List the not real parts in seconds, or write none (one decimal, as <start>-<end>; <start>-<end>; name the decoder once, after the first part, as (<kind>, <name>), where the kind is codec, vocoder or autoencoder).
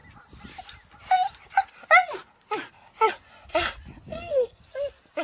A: 4.1-4.6 (codec, SNAC)